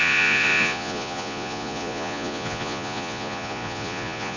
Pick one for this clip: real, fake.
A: fake